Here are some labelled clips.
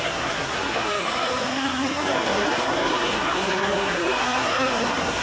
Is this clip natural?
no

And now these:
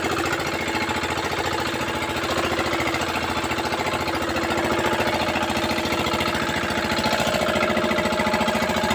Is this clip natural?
yes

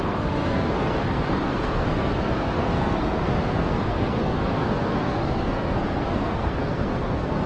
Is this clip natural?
no